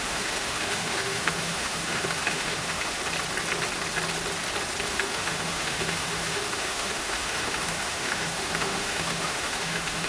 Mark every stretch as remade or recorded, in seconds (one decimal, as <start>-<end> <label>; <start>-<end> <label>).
0.0-3.0 remade; 3.0-4.9 recorded; 4.9-10.1 remade